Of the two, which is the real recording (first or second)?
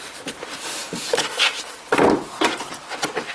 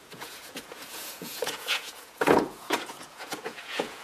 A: first